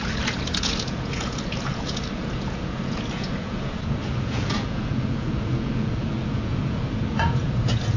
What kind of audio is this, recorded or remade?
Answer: remade